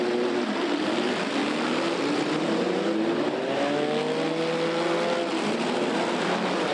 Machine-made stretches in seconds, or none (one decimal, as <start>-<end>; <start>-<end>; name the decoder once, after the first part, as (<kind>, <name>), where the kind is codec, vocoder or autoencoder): 0.0-1.4 (vocoder, BigVGAN v2); 5.4-6.7

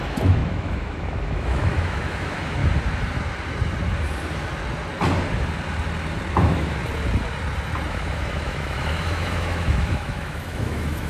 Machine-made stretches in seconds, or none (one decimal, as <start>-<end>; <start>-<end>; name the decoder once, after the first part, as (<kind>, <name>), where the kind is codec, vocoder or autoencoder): 0.0-2.6 (autoencoder, DAC-VAE); 6.3-6.8; 7.9-11.1

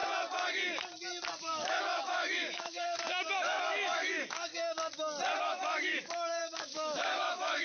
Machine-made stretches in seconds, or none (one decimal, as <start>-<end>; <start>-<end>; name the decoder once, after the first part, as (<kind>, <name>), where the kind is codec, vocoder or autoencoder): 1.4-4.5 (autoencoder, DAC-VAE); 5.4-7.6

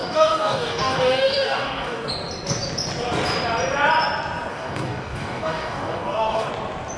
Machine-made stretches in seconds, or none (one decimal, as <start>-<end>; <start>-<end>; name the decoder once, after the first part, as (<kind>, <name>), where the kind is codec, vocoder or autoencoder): 0.0-2.1 (codec, DAC); 4.5-6.5

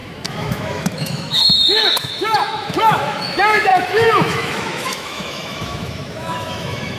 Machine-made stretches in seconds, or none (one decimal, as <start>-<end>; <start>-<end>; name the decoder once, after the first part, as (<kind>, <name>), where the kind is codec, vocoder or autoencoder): 0.0-7.0 (autoencoder, DAC-VAE)

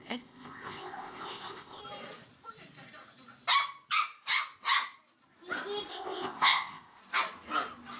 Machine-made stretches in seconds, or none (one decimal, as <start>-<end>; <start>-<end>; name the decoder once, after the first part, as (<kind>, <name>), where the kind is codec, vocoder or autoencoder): 0.0-1.8 (codec, ZipCodec); 5.9-7.0

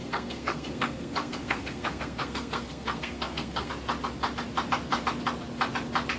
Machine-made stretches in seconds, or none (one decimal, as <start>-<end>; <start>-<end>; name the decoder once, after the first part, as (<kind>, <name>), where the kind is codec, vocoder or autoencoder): 0.0-3.7 (codec, SNAC)